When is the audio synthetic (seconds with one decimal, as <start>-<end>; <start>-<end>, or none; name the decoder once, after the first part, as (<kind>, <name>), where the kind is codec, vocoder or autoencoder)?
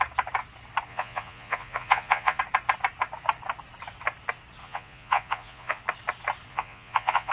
0.9-2.4 (vocoder, Vocos); 4.6-5.8; 6.5-7.3